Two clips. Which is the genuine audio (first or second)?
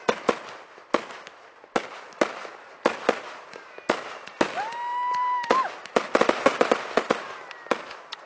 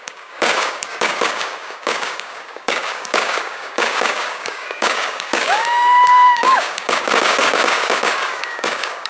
first